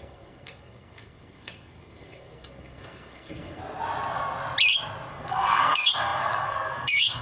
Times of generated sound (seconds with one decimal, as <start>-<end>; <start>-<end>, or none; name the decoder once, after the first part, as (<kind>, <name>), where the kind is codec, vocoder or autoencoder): 0.0-3.6 (codec, SNAC); 5.1-7.2